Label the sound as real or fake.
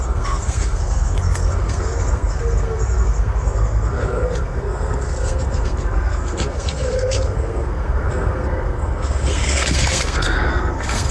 fake